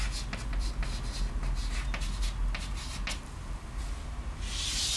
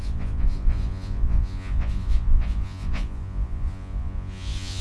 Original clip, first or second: first